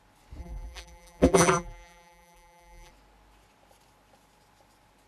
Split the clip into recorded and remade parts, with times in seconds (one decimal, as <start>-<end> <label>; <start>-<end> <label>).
0.0-0.4 recorded; 0.4-2.9 remade; 2.9-5.1 recorded